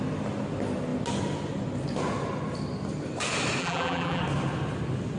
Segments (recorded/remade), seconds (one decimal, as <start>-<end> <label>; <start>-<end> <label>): 0.0-3.6 recorded; 3.6-4.2 remade; 4.2-5.2 recorded